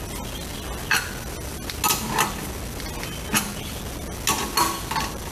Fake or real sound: real